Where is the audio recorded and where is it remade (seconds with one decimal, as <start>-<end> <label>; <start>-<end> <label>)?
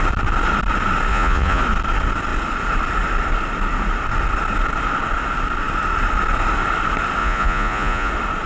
0.0-1.1 recorded; 1.1-1.6 remade; 1.6-7.2 recorded; 7.2-8.1 remade; 8.1-8.5 recorded